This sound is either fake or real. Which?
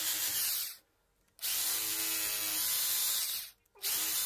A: real